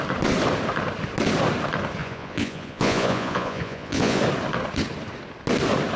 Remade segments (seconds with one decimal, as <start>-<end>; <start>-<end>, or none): 2.0-4.2